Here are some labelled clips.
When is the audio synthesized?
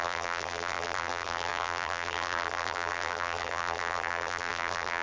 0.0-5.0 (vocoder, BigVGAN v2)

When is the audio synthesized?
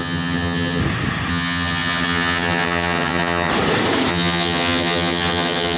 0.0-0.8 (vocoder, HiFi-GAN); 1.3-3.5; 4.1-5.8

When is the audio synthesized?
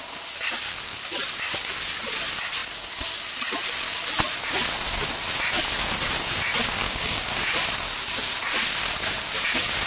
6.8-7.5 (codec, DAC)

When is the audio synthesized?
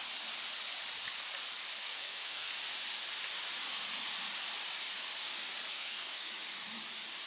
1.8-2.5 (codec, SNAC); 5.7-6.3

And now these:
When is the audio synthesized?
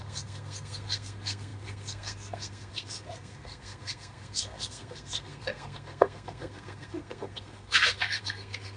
0.0-8.8 (codec, SNAC)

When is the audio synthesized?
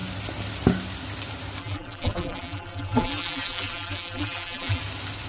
1.6-4.8 (vocoder, BigVGAN v2)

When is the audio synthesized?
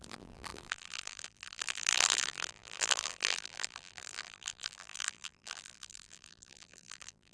0.0-7.3 (vocoder, BigVGAN v2)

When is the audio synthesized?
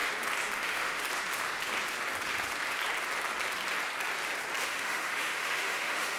0.6-1.0 (autoencoder, DAC-VAE); 4.7-6.2